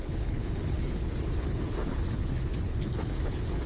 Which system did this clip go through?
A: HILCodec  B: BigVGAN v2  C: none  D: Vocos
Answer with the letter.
A